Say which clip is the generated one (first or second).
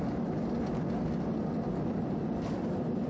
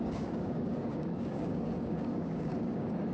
second